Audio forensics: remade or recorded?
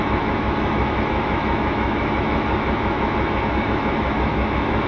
remade